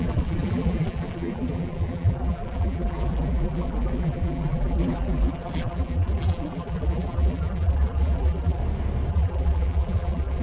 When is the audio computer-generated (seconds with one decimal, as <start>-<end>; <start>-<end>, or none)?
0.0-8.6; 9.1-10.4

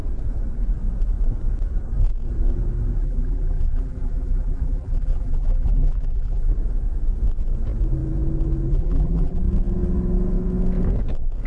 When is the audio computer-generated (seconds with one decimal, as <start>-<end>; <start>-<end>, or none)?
3.0-6.5; 8.7-9.4

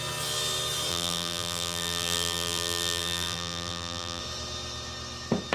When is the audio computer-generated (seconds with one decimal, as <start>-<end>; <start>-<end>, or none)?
0.9-4.2